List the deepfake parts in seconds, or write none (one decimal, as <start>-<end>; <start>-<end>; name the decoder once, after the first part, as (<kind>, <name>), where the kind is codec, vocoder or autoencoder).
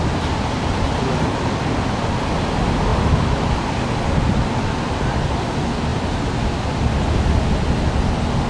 5.9-6.9 (vocoder, BigVGAN v2)